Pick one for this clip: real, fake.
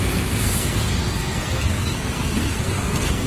fake